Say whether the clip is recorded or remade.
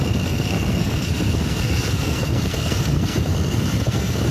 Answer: remade